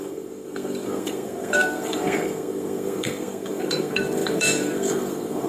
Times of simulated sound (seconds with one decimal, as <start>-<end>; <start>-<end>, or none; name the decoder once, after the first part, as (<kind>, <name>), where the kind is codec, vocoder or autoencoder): 0.0-5.5 (codec, SNAC)

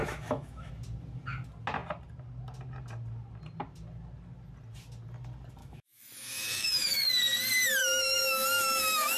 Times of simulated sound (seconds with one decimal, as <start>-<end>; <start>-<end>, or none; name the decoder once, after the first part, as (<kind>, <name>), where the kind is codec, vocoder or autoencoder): 0.0-0.7 (autoencoder, DAC-VAE); 5.6-7.1; 7.8-9.2

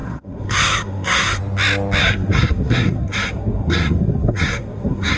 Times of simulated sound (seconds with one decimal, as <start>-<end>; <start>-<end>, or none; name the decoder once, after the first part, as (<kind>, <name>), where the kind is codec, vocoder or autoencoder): 0.0-1.4 (codec, SNAC); 2.0-5.2

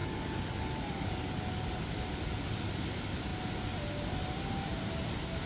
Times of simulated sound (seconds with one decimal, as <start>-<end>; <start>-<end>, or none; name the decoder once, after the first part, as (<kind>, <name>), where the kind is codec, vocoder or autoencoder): 0.0-1.9 (codec, DAC)

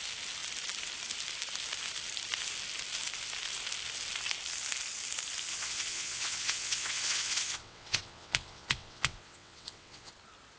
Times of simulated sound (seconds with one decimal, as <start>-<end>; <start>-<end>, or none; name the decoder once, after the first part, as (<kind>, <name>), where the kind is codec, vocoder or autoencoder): 5.5-10.1 (vocoder, WaveNeXt)